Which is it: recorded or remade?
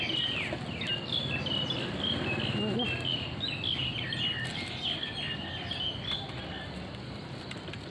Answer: recorded